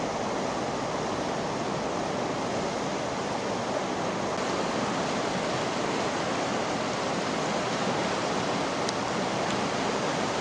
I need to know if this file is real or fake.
real